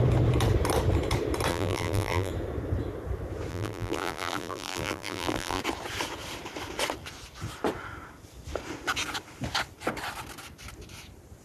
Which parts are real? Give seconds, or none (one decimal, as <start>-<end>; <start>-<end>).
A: 0.0-1.5; 2.3-3.5; 5.6-11.4